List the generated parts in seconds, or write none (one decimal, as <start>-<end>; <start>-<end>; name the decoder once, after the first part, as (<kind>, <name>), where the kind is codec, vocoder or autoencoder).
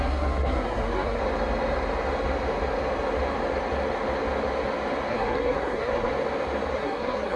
0.0-1.2 (codec, SNAC); 5.1-6.1; 6.7-7.4